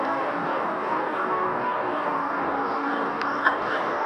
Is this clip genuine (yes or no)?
no